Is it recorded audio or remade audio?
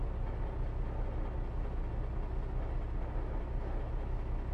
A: recorded